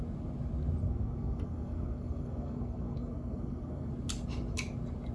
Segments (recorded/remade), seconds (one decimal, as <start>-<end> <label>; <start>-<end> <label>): 0.0-0.8 recorded; 0.8-3.9 remade; 3.9-5.1 recorded

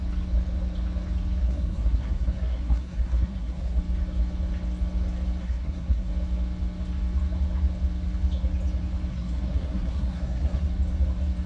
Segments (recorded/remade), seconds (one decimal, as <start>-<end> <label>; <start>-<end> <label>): 0.0-1.4 recorded; 1.4-3.8 remade; 3.8-5.4 recorded; 5.4-6.1 remade; 6.1-9.1 recorded; 9.1-10.7 remade; 10.7-11.5 recorded

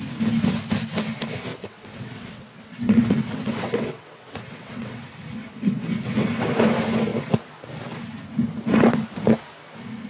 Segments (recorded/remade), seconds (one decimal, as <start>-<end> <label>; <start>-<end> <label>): 0.0-1.5 recorded; 1.5-5.0 remade; 5.0-5.4 recorded; 5.4-6.4 remade; 6.4-10.1 recorded